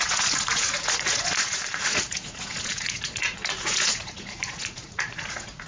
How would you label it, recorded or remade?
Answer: remade